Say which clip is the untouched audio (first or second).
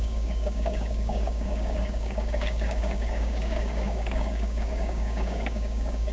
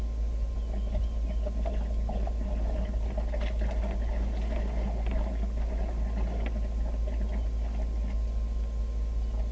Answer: second